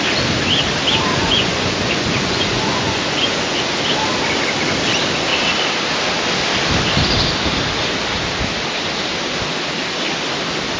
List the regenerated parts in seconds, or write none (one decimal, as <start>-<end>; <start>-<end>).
1.1-3.6